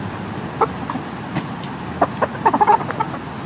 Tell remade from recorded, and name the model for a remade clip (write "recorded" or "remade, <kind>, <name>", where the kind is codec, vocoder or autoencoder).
recorded